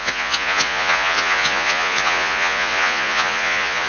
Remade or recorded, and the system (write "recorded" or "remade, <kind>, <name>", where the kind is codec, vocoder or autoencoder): remade, vocoder, Vocos